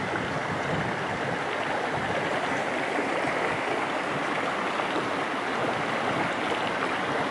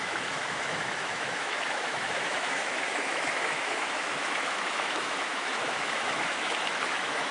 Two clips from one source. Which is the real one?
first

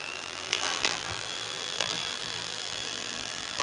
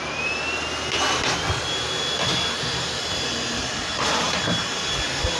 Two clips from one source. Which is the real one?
second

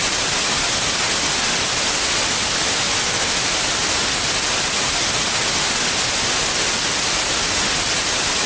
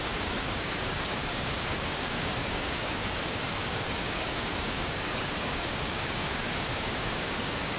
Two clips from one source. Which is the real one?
first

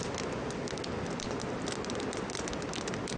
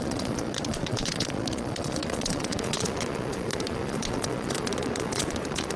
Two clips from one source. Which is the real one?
first